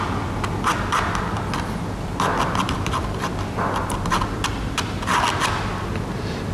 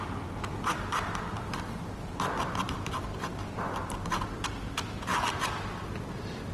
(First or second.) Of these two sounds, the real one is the first